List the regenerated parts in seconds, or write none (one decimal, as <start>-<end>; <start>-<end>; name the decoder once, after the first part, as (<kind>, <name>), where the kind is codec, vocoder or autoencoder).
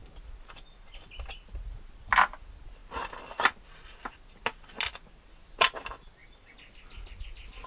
none